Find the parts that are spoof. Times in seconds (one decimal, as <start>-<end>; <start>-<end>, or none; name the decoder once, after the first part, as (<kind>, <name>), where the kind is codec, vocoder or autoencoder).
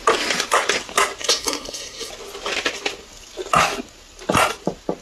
1.2-2.1 (codec, SNAC)